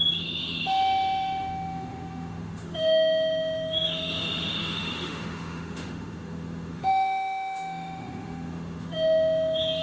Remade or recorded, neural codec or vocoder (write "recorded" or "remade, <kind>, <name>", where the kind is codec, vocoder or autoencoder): remade, autoencoder, DAC-VAE